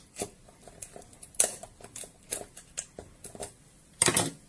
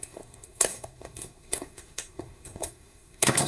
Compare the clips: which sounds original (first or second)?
first